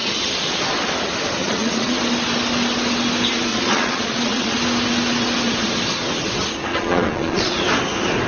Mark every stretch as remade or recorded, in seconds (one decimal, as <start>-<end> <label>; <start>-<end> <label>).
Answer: 0.0-0.6 remade; 0.6-1.4 recorded; 1.4-2.0 remade; 2.0-3.5 recorded; 3.5-4.6 remade; 4.6-6.7 recorded; 6.7-7.6 remade; 7.6-8.3 recorded